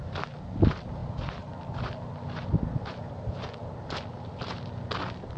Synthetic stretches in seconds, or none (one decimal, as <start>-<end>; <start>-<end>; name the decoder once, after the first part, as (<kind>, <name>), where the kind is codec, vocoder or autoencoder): none